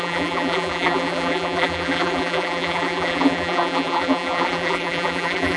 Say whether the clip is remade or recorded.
remade